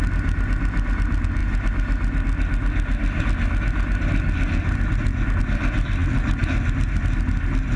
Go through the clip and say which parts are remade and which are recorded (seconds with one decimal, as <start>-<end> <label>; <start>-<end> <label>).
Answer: 0.0-7.8 recorded